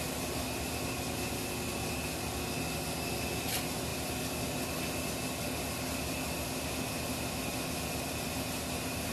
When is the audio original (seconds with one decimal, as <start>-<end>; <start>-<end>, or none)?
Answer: 0.0-9.1